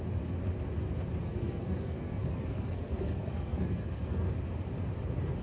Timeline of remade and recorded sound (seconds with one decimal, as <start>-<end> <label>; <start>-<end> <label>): 0.0-1.2 recorded; 1.2-4.3 remade; 4.3-5.4 recorded